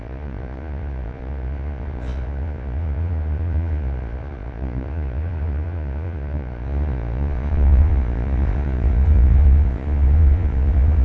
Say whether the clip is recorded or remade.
remade